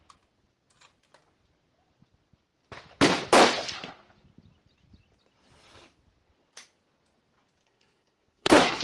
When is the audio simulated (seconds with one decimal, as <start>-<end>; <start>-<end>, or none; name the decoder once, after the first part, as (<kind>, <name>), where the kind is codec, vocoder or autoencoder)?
7.6-8.8 (codec, SNAC)